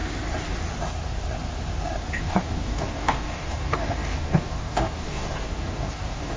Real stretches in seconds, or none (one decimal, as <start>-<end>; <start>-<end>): 0.0-2.2